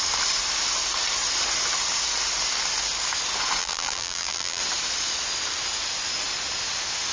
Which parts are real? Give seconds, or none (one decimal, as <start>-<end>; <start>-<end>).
0.0-3.6; 4.6-7.1